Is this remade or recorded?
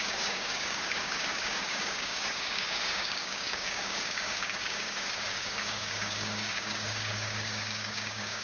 remade